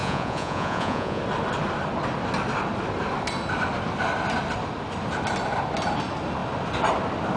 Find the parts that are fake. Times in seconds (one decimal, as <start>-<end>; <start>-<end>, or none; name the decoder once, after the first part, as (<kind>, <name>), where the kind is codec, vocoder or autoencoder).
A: 0.0-1.2 (vocoder, Vocos)